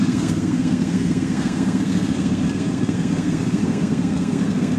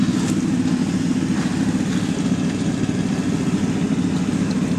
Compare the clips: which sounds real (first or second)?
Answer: second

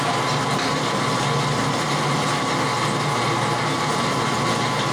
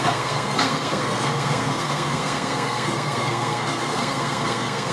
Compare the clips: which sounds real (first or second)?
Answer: first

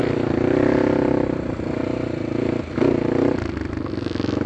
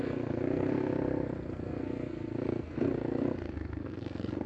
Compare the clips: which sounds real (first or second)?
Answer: first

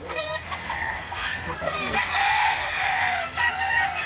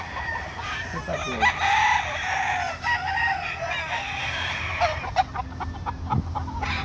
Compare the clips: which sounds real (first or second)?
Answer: second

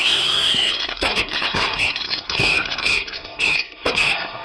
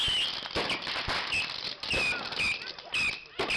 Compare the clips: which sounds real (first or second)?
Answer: second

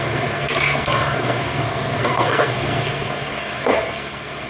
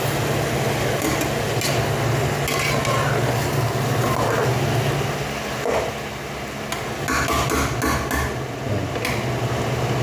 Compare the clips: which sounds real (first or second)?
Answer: second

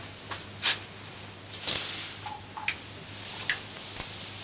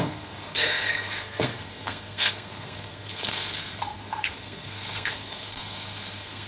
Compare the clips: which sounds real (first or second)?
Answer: first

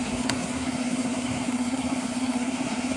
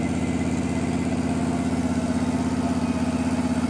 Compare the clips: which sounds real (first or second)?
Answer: second